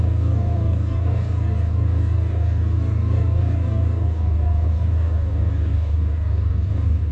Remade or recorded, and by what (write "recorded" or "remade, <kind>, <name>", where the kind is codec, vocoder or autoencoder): remade, codec, DAC